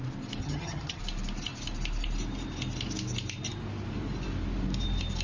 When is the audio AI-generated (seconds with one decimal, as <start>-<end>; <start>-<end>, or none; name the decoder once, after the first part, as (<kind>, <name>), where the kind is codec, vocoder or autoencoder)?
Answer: 0.4-1.0 (vocoder, HiFi-GAN)